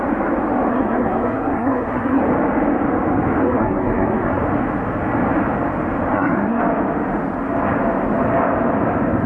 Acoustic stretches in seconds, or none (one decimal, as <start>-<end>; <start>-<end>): 0.0-0.7; 2.2-3.4; 4.4-6.1; 6.6-9.3